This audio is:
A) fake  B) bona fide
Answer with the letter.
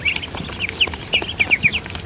B